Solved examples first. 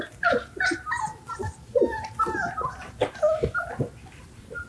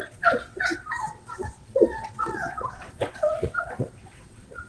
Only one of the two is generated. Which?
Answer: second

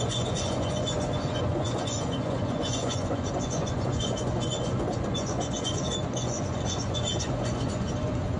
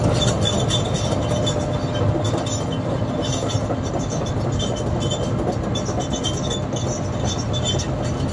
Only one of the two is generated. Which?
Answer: first